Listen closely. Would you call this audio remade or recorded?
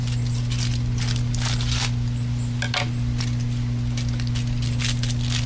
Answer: recorded